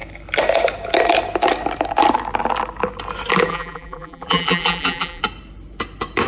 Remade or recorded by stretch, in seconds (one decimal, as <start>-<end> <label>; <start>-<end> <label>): 0.0-3.5 recorded; 3.5-5.2 remade; 5.2-6.3 recorded